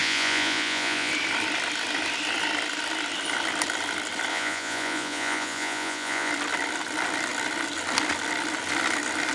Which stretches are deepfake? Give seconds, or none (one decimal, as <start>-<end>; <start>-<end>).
0.0-1.1; 4.3-6.3